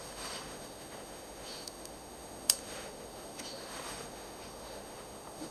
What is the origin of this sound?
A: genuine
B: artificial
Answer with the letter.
B